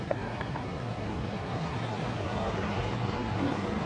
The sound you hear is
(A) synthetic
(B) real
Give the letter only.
A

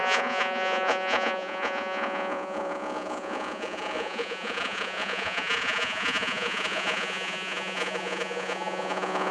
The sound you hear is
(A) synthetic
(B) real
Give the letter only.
A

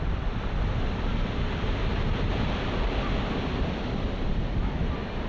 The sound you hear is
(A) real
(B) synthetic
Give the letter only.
A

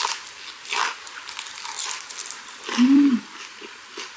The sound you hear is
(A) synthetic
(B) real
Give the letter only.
A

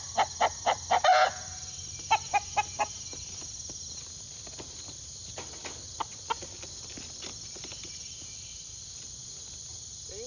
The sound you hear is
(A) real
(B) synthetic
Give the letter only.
A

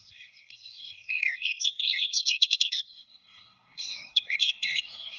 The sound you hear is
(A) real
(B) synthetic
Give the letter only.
B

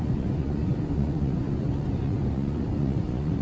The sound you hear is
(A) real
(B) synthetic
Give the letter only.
B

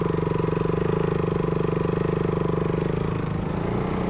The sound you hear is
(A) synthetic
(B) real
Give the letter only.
B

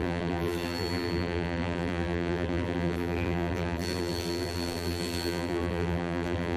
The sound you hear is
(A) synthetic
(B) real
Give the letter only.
A